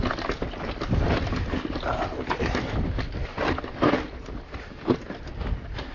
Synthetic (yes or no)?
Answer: no